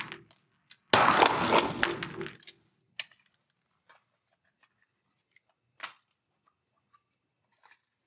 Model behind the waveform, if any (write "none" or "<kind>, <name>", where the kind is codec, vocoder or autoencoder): none